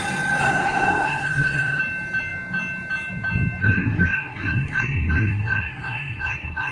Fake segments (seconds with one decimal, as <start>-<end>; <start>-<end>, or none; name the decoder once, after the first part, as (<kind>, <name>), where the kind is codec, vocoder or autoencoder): 0.4-1.8 (codec, SNAC); 3.6-6.7

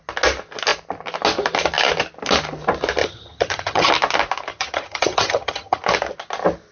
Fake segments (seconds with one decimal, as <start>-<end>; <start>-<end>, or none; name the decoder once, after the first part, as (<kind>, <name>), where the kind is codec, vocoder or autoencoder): 3.0-3.9 (vocoder, HiFi-GAN); 4.5-5.8

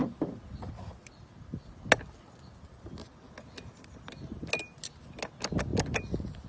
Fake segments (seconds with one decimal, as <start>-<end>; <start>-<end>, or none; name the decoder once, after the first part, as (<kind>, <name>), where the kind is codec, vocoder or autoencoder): none

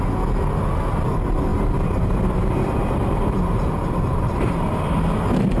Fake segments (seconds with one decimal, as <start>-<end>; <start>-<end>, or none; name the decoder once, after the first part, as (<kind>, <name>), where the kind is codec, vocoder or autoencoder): 1.5-4.8 (vocoder, BigVGAN v2)

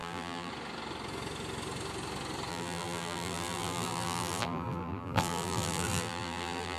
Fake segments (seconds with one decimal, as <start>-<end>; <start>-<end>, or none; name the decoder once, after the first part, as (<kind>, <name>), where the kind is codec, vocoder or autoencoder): 0.0-0.5 (vocoder, BigVGAN v2); 2.5-6.8

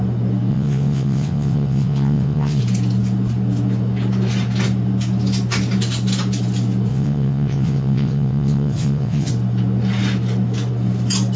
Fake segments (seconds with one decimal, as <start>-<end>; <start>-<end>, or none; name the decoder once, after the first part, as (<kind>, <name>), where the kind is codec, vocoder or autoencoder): 0.5-2.6 (vocoder, WaveNeXt); 6.9-9.3